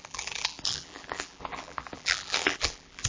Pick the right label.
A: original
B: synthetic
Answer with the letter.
B